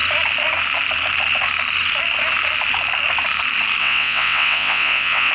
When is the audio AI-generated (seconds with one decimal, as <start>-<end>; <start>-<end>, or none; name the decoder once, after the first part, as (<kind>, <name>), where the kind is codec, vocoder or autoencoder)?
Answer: 3.8-5.3 (vocoder, WaveNeXt)